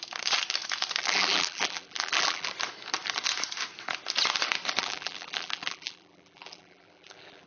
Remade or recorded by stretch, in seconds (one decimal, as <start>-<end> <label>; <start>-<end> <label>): 0.0-1.0 recorded; 1.0-2.5 remade; 2.5-4.8 recorded; 4.8-7.5 remade